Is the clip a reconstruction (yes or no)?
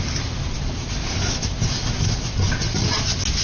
no